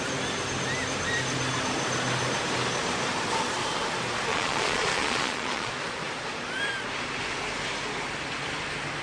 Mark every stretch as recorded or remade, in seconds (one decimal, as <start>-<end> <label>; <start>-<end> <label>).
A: 0.0-4.3 recorded; 4.3-5.7 remade; 5.7-9.0 recorded